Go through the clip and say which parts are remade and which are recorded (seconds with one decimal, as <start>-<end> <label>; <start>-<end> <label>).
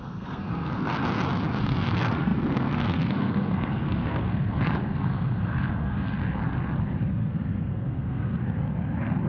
0.0-1.0 remade; 1.0-1.6 recorded; 1.6-6.2 remade; 6.2-7.1 recorded; 7.1-8.3 remade; 8.3-9.3 recorded